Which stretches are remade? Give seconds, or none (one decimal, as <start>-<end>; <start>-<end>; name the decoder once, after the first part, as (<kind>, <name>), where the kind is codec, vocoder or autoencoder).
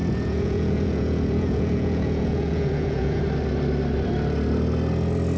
0.0-3.2 (vocoder, Vocos)